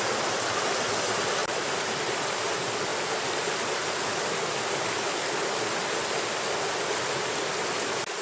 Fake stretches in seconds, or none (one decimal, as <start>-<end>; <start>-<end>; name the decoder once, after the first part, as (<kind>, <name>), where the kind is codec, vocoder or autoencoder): 1.4-2.2 (vocoder, BigVGAN v2)